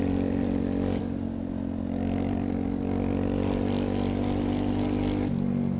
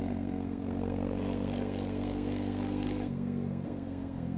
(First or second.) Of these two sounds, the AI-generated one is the second